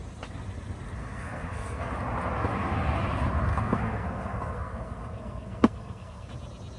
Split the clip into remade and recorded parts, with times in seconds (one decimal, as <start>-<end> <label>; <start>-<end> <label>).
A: 0.0-1.0 recorded; 1.0-1.9 remade; 1.9-3.5 recorded; 3.5-6.3 remade; 6.3-6.8 recorded